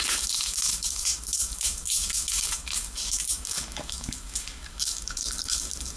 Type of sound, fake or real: fake